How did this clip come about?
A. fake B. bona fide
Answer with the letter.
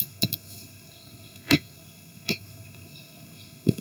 A